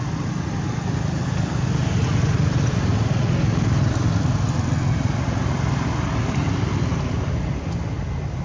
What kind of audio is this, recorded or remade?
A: recorded